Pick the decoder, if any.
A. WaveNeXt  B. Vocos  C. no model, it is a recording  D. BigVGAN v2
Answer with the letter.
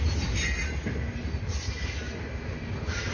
C